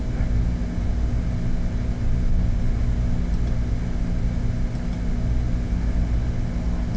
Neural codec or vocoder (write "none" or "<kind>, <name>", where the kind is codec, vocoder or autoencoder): none